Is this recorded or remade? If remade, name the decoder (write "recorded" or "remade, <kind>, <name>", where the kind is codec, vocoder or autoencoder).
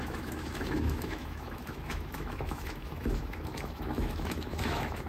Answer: remade, autoencoder, DAC-VAE